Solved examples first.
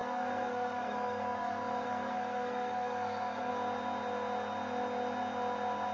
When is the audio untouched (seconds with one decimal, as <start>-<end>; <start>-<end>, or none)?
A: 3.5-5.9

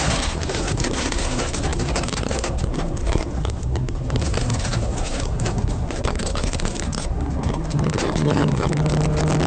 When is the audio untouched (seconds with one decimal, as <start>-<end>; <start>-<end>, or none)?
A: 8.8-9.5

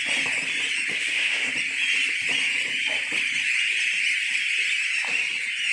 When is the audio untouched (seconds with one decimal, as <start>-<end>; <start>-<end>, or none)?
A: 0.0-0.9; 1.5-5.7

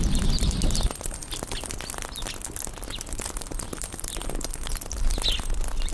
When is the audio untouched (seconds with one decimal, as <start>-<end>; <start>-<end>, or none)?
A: 0.0-5.9